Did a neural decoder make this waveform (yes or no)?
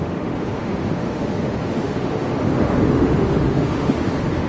yes